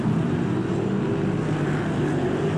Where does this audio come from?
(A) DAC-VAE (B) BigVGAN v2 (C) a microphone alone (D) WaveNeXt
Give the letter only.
C